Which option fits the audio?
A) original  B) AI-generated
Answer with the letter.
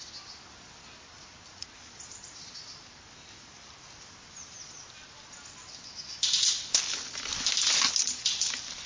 A